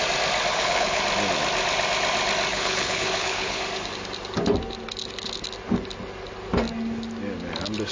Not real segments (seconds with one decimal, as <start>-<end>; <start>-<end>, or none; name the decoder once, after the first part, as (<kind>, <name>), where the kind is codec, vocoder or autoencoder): 0.5-1.0 (codec, HILCodec); 2.5-3.6